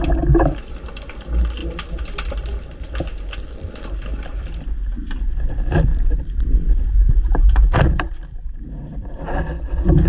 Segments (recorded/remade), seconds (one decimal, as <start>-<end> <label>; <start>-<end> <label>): 0.0-5.9 recorded; 5.9-8.7 remade; 8.7-10.1 recorded